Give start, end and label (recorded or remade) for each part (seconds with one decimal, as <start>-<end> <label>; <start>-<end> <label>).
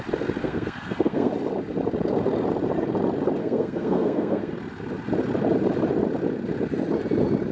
0.0-0.4 recorded; 0.4-1.3 remade; 1.3-3.4 recorded; 3.4-4.5 remade; 4.5-7.5 recorded